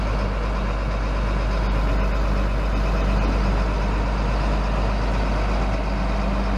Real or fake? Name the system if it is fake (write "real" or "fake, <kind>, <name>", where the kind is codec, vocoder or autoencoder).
real